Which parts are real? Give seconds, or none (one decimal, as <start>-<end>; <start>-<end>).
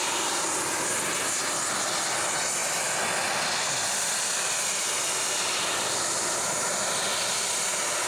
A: 0.0-8.1